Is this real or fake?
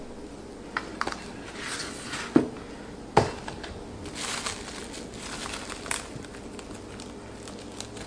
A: real